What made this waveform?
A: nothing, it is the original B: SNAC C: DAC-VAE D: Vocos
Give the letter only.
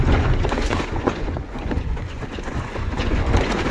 D